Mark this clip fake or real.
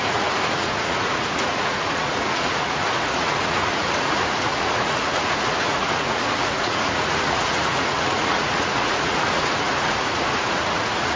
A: fake